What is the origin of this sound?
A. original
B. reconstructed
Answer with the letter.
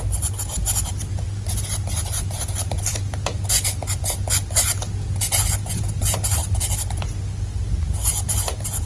A